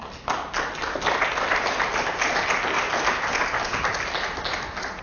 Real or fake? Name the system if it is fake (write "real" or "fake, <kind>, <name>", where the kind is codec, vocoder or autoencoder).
real